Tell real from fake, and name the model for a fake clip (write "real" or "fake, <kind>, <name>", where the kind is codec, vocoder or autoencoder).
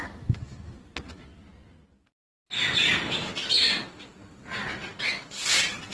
real